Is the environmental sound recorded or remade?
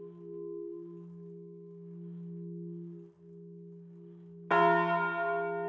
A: recorded